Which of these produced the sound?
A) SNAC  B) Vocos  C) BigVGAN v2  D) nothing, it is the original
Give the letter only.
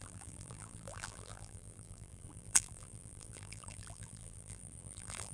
C